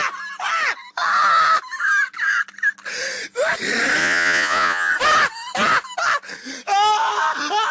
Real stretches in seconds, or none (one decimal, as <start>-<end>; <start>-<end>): 0.0-4.0; 4.9-7.7

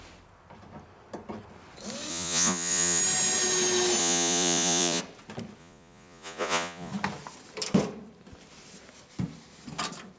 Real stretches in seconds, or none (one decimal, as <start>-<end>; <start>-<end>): 0.0-2.1; 3.0-4.0; 5.0-5.6; 6.9-10.2

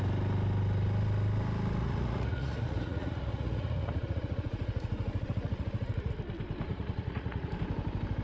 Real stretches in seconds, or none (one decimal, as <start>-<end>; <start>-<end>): 0.0-1.8; 6.1-6.7; 7.5-8.2

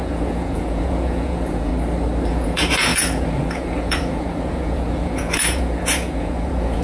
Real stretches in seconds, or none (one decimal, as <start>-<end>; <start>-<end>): 1.7-2.3